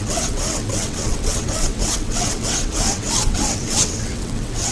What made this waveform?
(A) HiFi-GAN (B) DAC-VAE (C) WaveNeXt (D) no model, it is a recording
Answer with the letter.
C